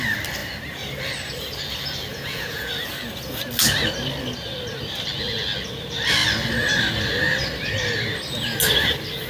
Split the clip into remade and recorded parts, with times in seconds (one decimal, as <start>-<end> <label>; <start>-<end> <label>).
0.0-2.1 recorded; 2.1-2.7 remade; 2.7-9.3 recorded